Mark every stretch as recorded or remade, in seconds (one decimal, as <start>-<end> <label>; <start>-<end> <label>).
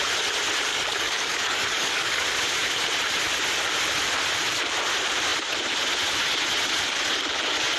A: 0.0-0.7 recorded; 0.7-2.2 remade; 2.2-7.8 recorded